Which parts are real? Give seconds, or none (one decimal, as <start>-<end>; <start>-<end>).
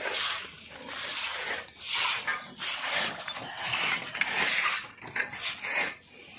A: 0.0-6.4